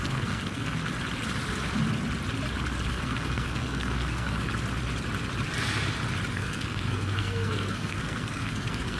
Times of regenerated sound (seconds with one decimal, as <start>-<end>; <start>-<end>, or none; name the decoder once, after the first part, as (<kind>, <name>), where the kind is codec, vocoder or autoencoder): 0.0-0.8 (codec, SNAC); 2.9-4.5; 6.3-9.0